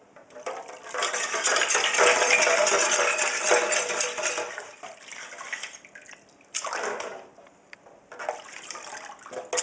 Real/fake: real